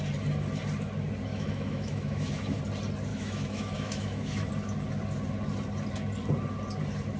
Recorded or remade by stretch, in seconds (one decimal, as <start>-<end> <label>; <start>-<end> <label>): 0.0-1.3 recorded; 1.3-2.6 remade; 2.6-3.1 recorded; 3.1-4.5 remade; 4.5-7.2 recorded